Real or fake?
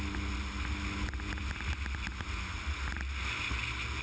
real